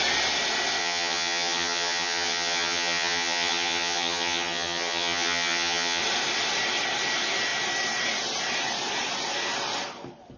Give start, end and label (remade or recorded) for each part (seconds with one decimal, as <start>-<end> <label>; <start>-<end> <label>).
0.0-0.8 recorded; 0.8-6.0 remade; 6.0-10.4 recorded